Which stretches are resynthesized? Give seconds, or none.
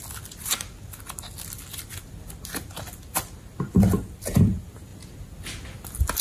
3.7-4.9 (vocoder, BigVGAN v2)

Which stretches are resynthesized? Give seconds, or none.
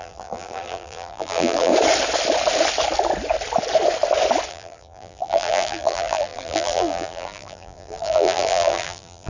0.0-1.7 (vocoder, BigVGAN v2); 4.5-9.3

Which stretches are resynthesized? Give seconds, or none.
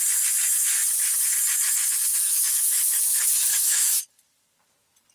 2.1-2.8 (autoencoder, DAC-VAE); 3.5-4.0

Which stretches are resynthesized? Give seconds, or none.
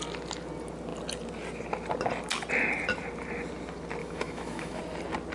4.0-4.8 (autoencoder, DAC-VAE)